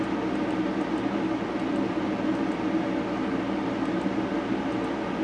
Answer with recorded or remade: recorded